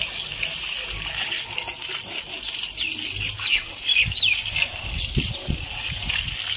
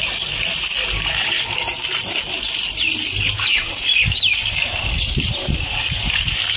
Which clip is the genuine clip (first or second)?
first